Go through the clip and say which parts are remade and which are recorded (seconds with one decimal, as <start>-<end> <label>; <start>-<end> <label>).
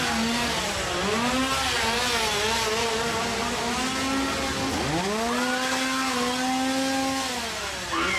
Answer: 0.0-8.2 recorded